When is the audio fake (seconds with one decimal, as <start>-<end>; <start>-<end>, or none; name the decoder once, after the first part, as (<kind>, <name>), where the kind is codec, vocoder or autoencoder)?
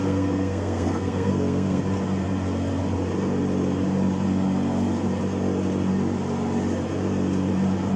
0.0-1.8 (codec, SNAC)